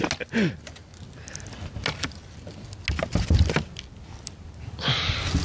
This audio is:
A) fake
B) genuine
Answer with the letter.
B